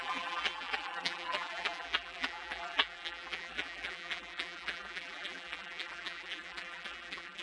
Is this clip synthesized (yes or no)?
yes